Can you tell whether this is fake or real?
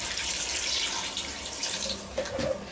fake